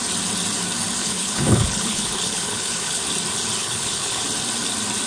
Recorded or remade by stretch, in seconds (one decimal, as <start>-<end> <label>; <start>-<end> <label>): 0.0-1.0 recorded; 1.0-3.0 remade; 3.0-3.6 recorded; 3.6-4.2 remade; 4.2-5.1 recorded

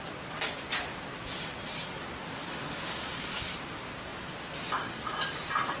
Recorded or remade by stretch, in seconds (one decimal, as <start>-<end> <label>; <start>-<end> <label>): 0.0-2.4 recorded; 2.4-3.6 remade; 3.6-5.8 recorded

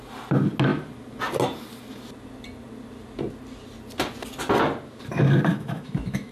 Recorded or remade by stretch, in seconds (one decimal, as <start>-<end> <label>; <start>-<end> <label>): 0.0-5.5 recorded; 5.5-6.3 remade

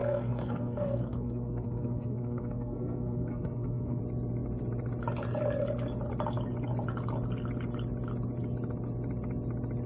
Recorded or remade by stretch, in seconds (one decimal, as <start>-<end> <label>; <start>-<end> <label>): 0.0-4.0 remade; 4.0-9.9 recorded